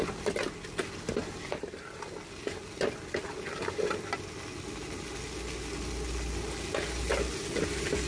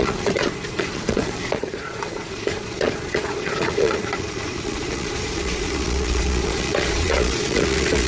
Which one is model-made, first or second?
second